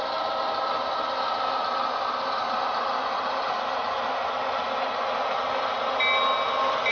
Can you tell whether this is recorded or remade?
recorded